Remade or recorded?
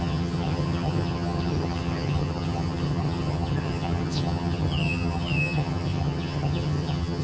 remade